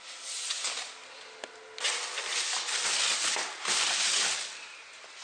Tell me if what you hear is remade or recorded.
recorded